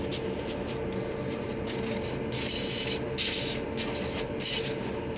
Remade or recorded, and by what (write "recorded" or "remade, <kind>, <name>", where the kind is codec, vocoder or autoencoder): recorded